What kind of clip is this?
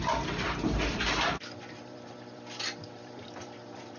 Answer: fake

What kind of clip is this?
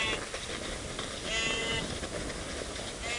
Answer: real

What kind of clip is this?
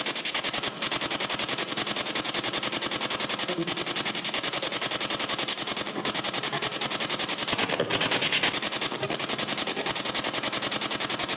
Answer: real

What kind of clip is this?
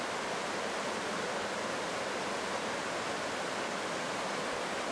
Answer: real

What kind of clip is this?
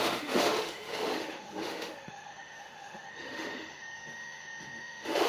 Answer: fake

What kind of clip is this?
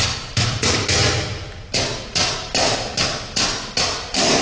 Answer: real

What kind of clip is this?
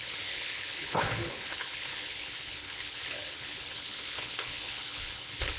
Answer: fake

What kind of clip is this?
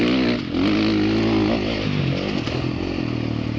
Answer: real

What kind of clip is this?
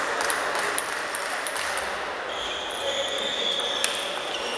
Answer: real